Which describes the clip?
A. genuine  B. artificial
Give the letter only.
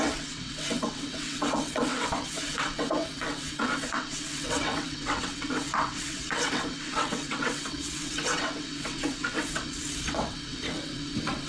B